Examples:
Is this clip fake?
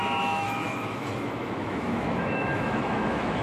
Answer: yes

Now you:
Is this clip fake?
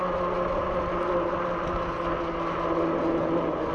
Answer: no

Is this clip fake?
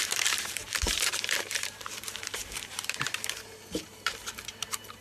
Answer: yes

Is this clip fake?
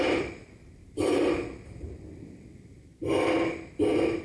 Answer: no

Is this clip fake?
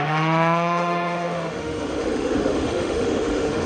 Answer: yes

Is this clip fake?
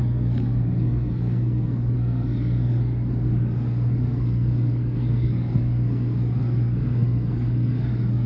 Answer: yes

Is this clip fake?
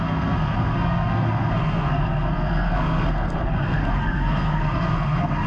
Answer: yes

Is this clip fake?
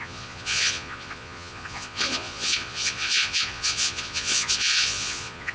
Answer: yes